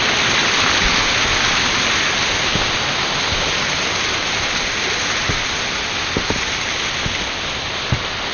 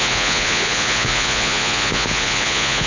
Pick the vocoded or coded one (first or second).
second